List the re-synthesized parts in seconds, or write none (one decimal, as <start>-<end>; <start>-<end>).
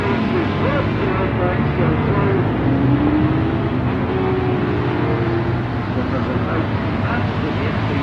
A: none